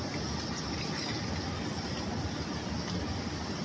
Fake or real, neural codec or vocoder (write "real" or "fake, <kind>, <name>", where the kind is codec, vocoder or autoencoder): real